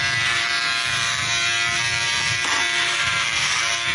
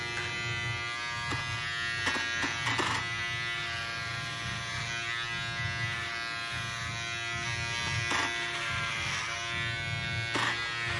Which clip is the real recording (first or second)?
second